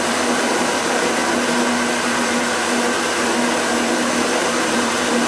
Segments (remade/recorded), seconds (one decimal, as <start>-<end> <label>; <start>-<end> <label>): 0.0-1.2 remade; 1.2-4.4 recorded; 4.4-5.3 remade